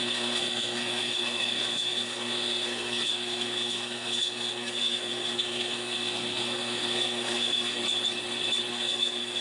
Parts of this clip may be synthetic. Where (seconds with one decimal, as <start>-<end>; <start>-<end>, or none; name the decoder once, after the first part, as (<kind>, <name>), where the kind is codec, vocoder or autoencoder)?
0.0-7.8 (codec, SNAC); 8.7-9.4